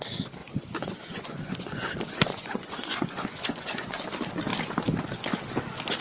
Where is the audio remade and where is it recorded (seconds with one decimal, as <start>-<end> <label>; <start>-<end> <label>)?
0.0-0.4 recorded; 0.4-4.0 remade; 4.0-6.0 recorded